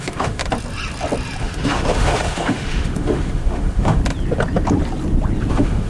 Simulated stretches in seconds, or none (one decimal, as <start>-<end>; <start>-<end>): 0.0-0.4; 1.4-4.0; 5.5-5.9